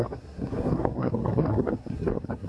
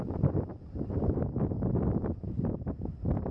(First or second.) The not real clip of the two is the first